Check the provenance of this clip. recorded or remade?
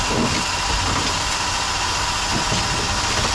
recorded